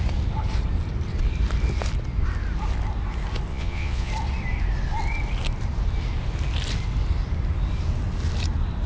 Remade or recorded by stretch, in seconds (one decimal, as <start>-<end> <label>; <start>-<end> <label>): 0.0-3.5 recorded; 3.5-4.1 remade; 4.1-8.9 recorded